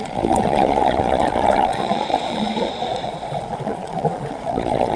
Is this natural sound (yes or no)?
no